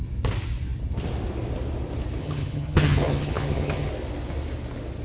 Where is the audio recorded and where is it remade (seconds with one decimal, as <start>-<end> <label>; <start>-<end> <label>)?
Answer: 0.0-2.2 recorded; 2.2-3.9 remade; 3.9-5.0 recorded

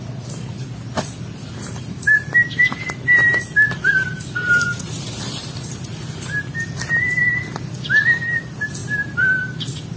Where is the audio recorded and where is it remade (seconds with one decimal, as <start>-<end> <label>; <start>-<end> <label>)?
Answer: 0.0-10.0 recorded